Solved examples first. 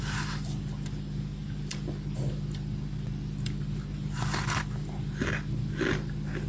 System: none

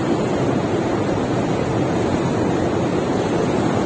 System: none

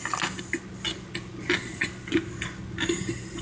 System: none